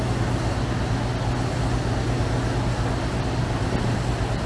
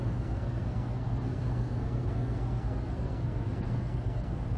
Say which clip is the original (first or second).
first